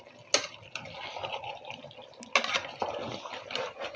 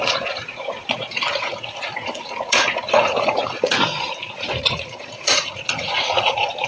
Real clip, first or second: first